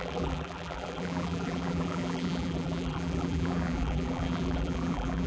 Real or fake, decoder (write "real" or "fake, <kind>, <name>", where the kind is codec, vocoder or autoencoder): fake, vocoder, BigVGAN v2